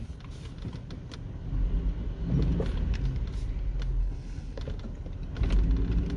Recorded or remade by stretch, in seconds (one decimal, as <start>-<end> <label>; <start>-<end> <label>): 0.0-4.0 recorded; 4.0-4.6 remade; 4.6-6.2 recorded